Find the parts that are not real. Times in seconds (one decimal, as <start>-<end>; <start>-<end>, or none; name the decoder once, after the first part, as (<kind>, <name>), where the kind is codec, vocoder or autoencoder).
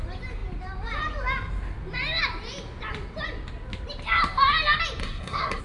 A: 5.0-5.6 (codec, SNAC)